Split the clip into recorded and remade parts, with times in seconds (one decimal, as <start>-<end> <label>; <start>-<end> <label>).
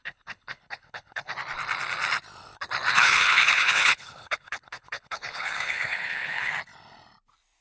0.0-1.3 remade; 1.3-2.9 recorded; 2.9-6.5 remade; 6.5-7.6 recorded